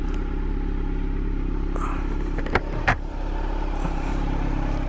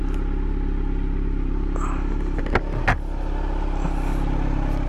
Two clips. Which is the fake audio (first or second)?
first